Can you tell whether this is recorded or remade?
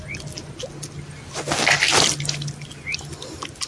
recorded